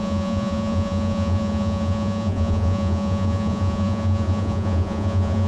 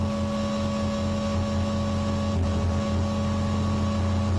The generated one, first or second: first